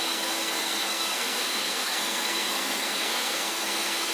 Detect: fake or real fake